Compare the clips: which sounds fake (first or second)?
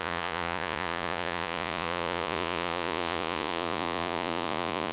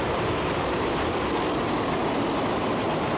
first